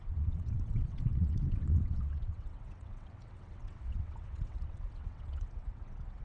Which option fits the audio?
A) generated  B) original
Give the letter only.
A